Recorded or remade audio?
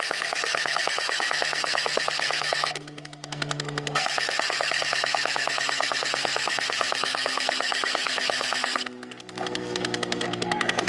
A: remade